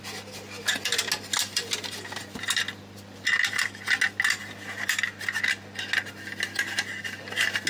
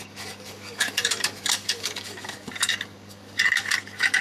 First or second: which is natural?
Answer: first